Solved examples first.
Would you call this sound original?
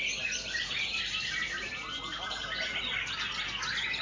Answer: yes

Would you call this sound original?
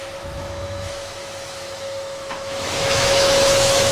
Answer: no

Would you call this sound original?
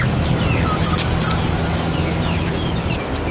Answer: yes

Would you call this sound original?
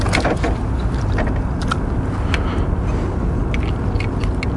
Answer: yes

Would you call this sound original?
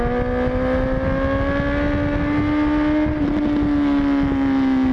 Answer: yes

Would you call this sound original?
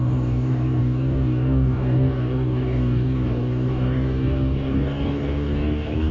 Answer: no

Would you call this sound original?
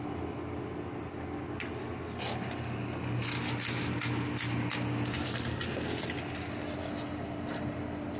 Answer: yes